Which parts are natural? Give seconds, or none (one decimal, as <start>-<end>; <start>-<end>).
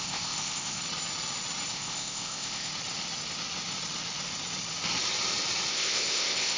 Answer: 0.8-1.7; 2.7-5.7